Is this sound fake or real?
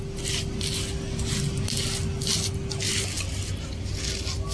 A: real